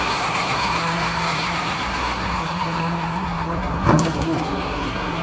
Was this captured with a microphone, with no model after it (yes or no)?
no